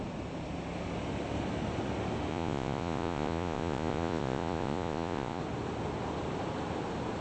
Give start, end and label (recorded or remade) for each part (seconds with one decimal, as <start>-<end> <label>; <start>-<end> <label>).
0.0-2.3 recorded; 2.3-5.4 remade; 5.4-7.2 recorded